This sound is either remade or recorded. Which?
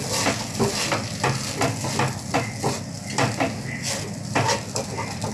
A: recorded